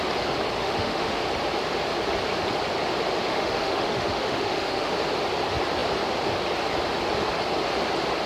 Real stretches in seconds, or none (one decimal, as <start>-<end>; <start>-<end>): 0.0-0.6; 1.2-3.3; 4.9-8.3